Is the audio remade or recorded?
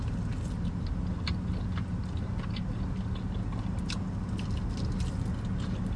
recorded